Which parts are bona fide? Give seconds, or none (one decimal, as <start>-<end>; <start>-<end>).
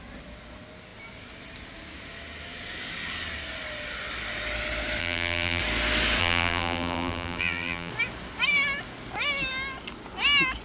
0.0-5.0; 5.6-6.2; 7.9-10.6